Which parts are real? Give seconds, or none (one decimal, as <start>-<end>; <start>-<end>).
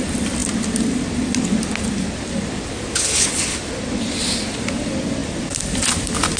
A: 0.0-6.4